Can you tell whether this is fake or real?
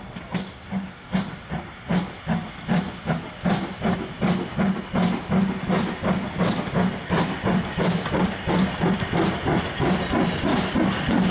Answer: real